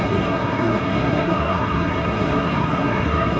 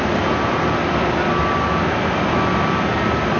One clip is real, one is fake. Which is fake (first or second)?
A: first